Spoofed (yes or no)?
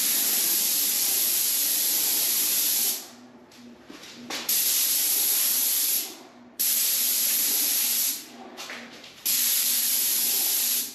yes